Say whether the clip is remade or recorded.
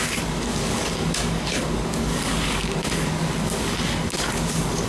remade